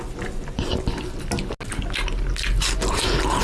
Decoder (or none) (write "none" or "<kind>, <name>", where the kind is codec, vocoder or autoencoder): none